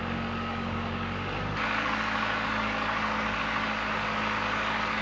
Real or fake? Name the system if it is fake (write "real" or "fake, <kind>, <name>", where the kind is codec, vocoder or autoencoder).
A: fake, codec, DAC